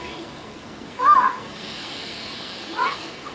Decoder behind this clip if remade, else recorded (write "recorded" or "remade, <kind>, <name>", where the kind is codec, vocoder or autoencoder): remade, codec, SNAC